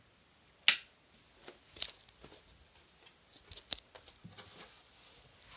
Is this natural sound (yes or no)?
yes